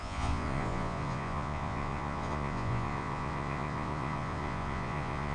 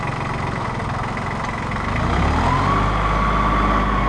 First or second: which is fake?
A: first